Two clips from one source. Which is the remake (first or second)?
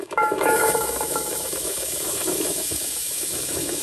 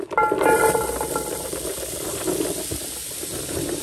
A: first